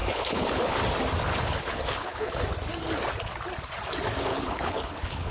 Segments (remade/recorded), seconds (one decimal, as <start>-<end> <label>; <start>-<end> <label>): 0.0-0.8 remade; 0.8-1.3 recorded; 1.3-2.4 remade; 2.4-4.3 recorded; 4.3-5.3 remade